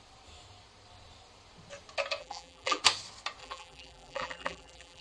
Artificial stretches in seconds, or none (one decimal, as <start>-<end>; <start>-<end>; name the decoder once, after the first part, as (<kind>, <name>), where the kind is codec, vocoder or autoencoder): 2.2-2.8 (vocoder, BigVGAN v2); 3.4-5.0